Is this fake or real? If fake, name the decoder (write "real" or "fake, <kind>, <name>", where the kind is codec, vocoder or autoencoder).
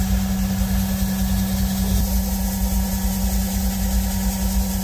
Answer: real